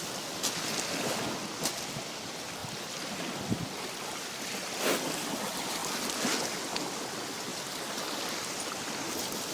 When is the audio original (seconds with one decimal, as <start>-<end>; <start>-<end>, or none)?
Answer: 0.0-9.5